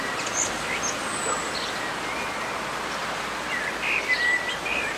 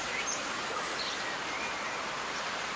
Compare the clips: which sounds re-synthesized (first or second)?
second